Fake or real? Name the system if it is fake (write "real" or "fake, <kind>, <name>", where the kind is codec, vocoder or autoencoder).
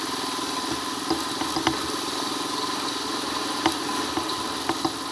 real